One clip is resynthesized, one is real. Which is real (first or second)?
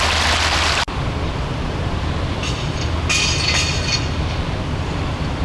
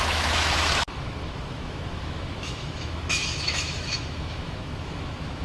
first